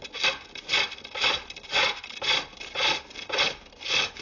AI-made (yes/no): no